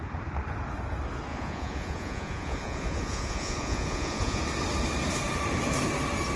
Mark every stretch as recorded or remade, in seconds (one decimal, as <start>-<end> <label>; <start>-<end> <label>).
0.0-1.3 recorded; 1.3-4.4 remade; 4.4-6.4 recorded